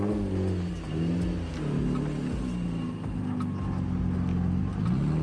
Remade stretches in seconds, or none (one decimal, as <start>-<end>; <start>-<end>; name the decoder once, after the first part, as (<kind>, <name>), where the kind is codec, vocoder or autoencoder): none